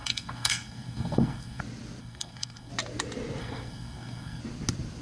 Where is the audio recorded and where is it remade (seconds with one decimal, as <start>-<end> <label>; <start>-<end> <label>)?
0.0-1.6 remade; 1.6-2.0 recorded; 2.0-2.7 remade; 2.7-3.4 recorded; 3.4-4.4 remade; 4.4-5.0 recorded